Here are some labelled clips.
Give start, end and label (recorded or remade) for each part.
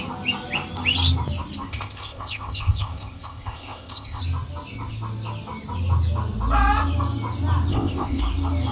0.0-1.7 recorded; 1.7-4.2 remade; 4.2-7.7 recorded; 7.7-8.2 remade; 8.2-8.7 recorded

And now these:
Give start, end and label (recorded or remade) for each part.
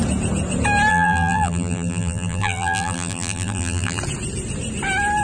0.0-0.9 recorded; 0.9-4.0 remade; 4.0-5.2 recorded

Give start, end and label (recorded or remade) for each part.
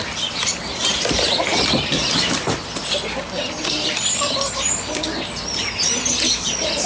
0.0-6.9 recorded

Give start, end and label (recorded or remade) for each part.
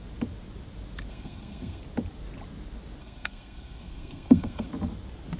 0.0-1.1 recorded; 1.1-1.8 remade; 1.8-3.0 recorded; 3.0-4.7 remade; 4.7-5.4 recorded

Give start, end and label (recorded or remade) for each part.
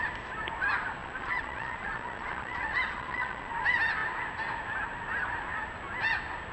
0.0-1.0 recorded; 1.0-3.5 remade; 3.5-6.5 recorded